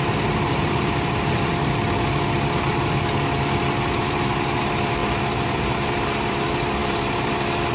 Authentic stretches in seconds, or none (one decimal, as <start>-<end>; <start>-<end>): 1.5-4.0